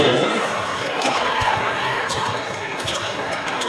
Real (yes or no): no